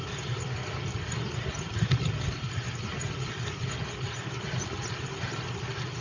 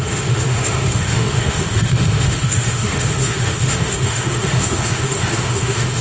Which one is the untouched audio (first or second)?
first